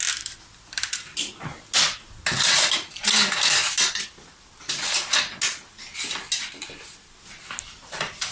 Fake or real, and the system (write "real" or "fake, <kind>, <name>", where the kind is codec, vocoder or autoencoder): real